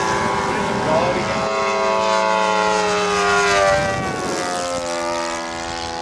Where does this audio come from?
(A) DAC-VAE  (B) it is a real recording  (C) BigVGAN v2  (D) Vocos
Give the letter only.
B